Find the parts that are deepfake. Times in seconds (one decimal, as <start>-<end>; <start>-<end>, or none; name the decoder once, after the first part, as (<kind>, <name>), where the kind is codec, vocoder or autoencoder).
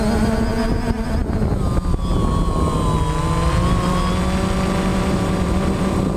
4.9-6.2 (vocoder, BigVGAN v2)